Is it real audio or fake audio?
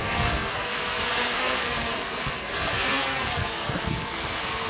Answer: fake